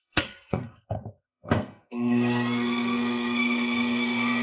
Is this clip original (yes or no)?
no